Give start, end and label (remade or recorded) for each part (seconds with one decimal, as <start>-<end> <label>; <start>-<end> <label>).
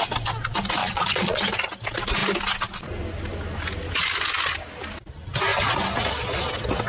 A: 0.0-0.8 recorded; 0.8-1.4 remade; 1.4-6.9 recorded